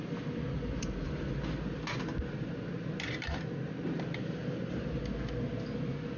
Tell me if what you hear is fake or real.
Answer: real